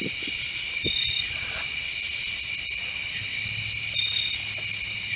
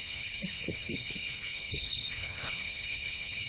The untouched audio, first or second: first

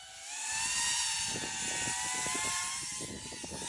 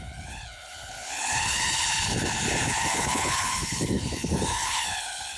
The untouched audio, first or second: first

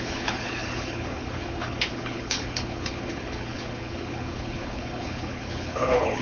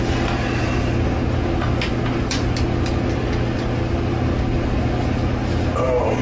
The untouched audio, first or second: second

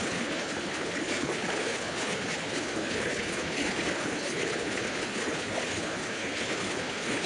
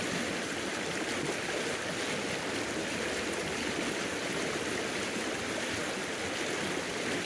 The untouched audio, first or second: second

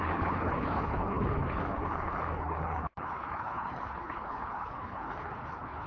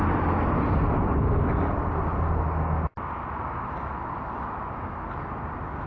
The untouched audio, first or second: second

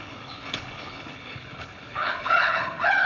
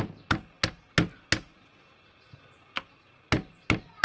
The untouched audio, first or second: second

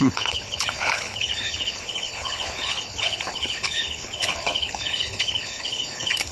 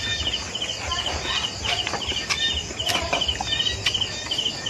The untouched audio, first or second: second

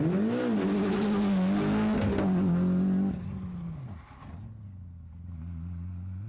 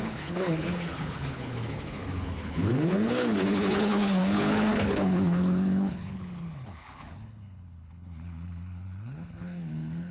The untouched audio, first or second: first